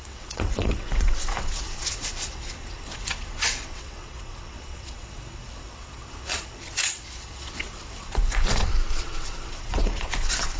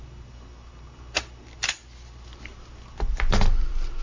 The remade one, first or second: first